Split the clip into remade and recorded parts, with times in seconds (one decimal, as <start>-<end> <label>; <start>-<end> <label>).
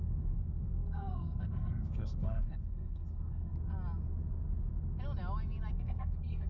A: 0.0-3.5 remade; 3.5-5.7 recorded; 5.7-6.5 remade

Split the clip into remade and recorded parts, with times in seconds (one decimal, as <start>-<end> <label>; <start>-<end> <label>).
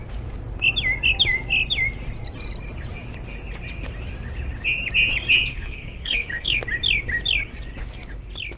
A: 0.0-5.5 recorded; 5.5-6.6 remade; 6.6-8.6 recorded